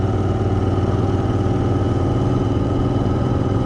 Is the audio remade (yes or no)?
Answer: yes